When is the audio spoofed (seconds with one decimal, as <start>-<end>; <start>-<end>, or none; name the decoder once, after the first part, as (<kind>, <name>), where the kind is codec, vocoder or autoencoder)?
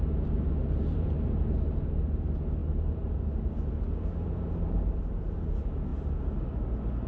0.6-2.0 (vocoder, BigVGAN v2); 2.6-3.5